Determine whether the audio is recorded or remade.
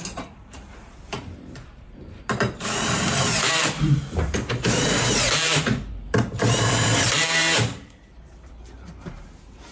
remade